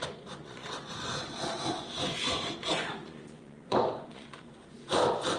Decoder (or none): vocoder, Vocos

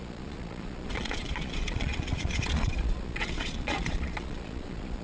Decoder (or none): vocoder, Vocos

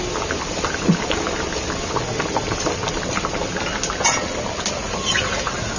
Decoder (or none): none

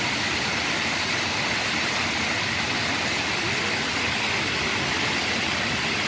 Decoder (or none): none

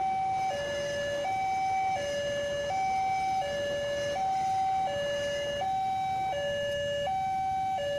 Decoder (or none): none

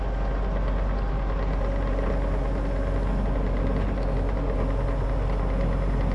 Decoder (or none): none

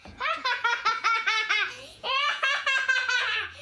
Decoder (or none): vocoder, Vocos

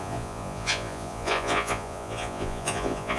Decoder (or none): vocoder, Vocos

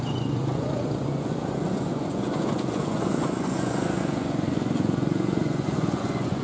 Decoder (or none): vocoder, Vocos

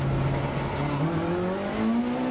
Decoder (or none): none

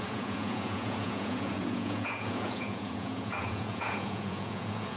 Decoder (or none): vocoder, Vocos